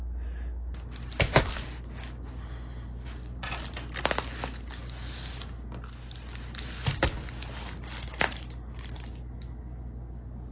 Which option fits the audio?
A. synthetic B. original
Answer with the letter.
B